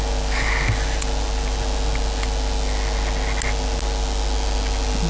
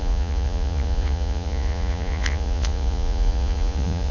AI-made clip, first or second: second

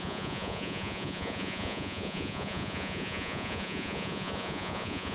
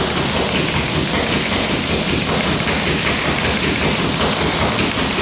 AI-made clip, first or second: first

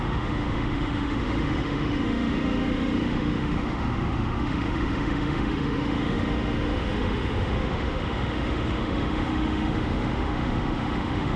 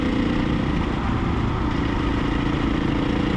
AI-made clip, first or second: first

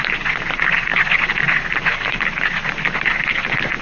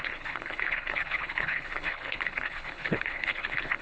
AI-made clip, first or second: second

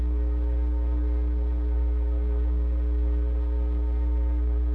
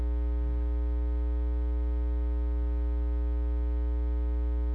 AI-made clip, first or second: first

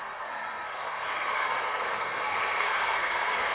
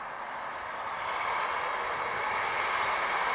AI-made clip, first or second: first